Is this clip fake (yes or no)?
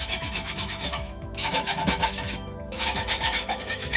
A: yes